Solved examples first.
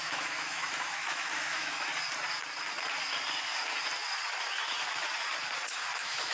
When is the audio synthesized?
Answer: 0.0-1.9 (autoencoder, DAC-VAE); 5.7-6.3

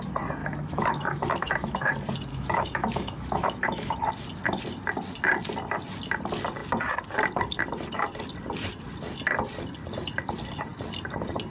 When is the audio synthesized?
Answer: 0.4-1.9 (autoencoder, DAC-VAE); 2.3-4.1

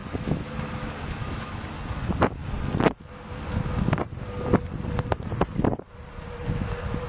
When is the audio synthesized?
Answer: 0.0-0.7 (autoencoder, DAC-VAE); 1.2-1.7

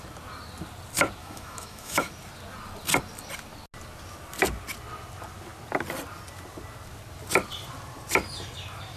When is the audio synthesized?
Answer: 1.2-2.1 (autoencoder, DAC-VAE)

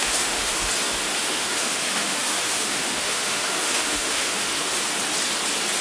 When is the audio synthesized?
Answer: 0.0-0.7 (autoencoder, DAC-VAE); 1.2-4.7

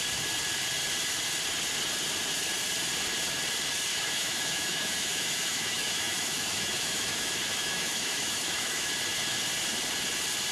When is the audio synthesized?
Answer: 3.9-8.9 (autoencoder, DAC-VAE)

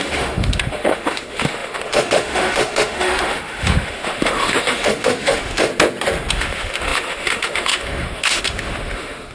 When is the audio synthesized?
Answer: 0.0-5.7 (autoencoder, DAC-VAE); 6.3-9.3

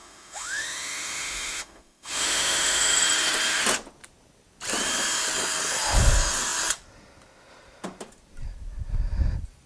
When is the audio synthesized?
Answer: 0.0-3.0 (autoencoder, DAC-VAE)